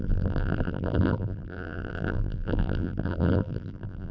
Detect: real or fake fake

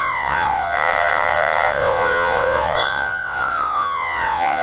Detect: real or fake fake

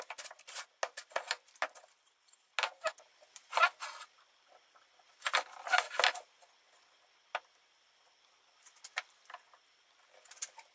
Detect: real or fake real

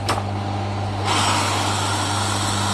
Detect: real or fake real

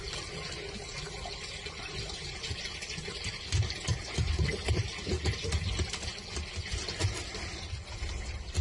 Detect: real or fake real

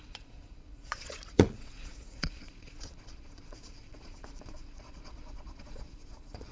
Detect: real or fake fake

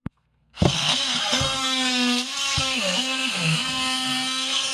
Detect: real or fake fake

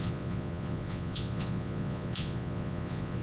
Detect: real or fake fake